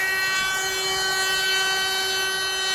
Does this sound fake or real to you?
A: real